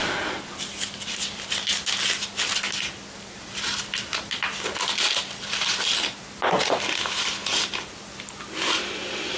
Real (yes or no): yes